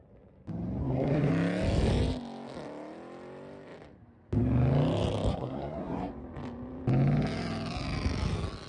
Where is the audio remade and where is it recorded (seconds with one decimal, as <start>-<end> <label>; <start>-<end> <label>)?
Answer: 0.0-0.8 recorded; 0.8-1.3 remade; 1.3-5.3 recorded; 5.3-6.1 remade; 6.1-8.7 recorded